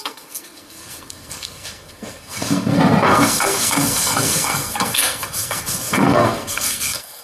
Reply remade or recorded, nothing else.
remade